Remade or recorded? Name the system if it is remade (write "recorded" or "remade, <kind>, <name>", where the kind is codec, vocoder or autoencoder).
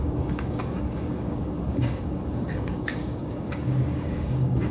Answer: remade, codec, DAC